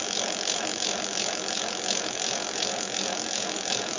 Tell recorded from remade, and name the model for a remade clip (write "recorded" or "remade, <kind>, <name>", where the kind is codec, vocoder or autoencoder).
remade, autoencoder, DAC-VAE